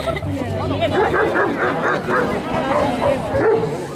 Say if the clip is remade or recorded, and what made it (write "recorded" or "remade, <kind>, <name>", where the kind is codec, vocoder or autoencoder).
recorded